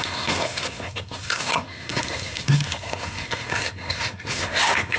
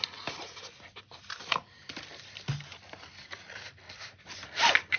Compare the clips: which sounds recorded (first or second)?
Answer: second